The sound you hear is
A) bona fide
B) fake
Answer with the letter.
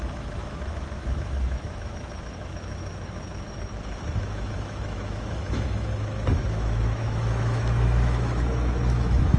B